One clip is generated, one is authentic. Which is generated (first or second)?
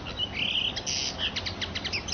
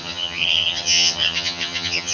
second